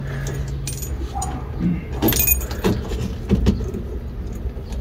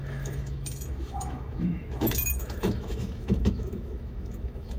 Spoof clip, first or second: second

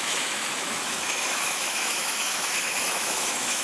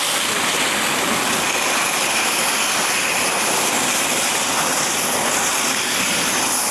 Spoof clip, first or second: first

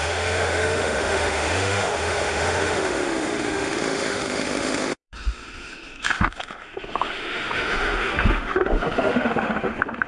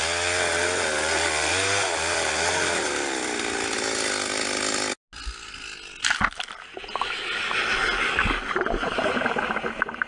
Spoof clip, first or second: first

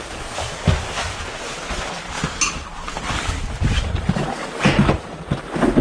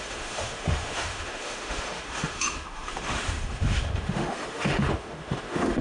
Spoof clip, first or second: second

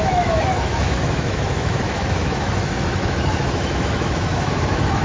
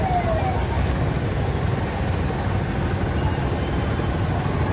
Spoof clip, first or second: first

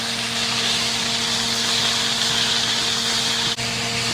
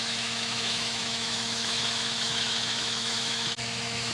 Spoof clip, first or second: second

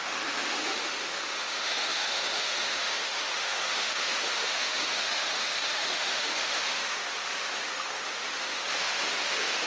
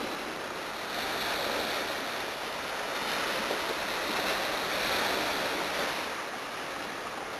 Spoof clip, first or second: first